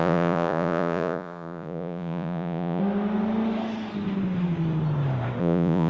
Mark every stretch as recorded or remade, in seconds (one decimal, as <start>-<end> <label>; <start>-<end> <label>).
0.0-2.8 remade; 2.8-5.4 recorded; 5.4-5.9 remade